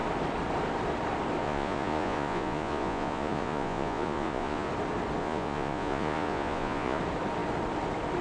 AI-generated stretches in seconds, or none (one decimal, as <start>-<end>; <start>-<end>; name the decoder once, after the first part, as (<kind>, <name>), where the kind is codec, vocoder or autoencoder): 1.4-4.7 (vocoder, Vocos); 5.2-7.0